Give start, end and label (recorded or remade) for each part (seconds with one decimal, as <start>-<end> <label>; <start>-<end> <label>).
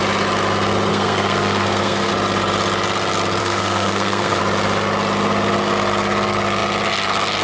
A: 0.0-0.9 recorded; 0.9-2.1 remade; 2.1-3.4 recorded; 3.4-4.4 remade; 4.4-7.4 recorded